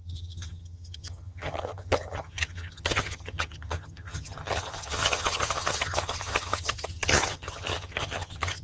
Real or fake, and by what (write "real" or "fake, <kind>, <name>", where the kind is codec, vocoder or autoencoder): fake, vocoder, HiFi-GAN